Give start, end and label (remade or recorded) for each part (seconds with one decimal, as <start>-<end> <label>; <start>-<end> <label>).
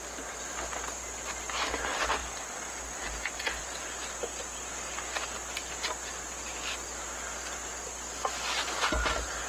0.0-9.5 recorded